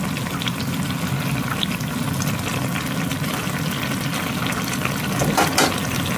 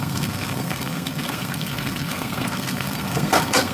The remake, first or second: second